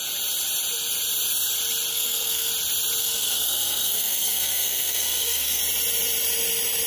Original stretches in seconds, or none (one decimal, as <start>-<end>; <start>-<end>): 0.0-1.9; 2.5-3.0; 5.6-6.9